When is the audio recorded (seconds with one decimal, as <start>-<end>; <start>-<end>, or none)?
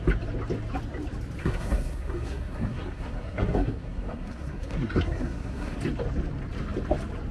0.0-1.4; 5.8-7.3